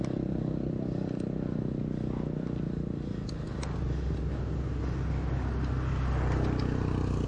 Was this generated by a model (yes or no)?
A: no